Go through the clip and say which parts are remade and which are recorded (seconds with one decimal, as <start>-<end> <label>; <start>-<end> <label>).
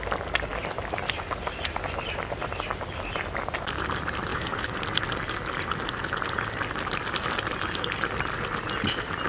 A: 0.0-4.3 recorded; 4.3-4.8 remade; 4.8-9.3 recorded